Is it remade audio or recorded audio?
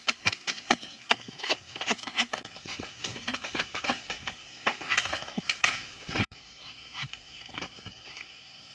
remade